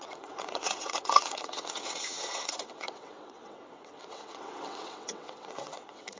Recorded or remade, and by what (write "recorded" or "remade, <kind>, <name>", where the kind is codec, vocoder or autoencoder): remade, vocoder, WaveNeXt